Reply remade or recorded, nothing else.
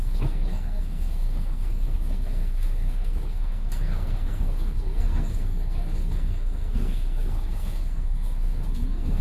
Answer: remade